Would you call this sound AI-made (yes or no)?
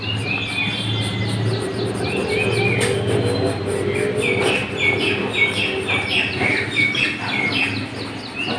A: no